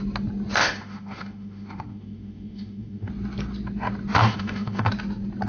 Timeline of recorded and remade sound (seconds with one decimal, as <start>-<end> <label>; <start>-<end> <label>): 0.0-0.6 recorded; 0.6-3.1 remade; 3.1-4.2 recorded; 4.2-4.9 remade; 4.9-5.5 recorded